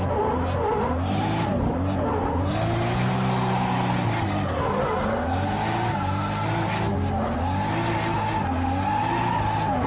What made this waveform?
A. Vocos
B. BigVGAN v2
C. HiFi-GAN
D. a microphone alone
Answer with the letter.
D